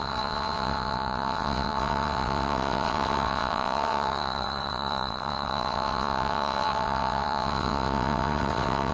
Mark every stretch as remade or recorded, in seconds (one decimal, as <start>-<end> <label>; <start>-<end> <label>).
0.0-8.9 remade